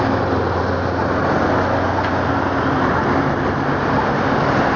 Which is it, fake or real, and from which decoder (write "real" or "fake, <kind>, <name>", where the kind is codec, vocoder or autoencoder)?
real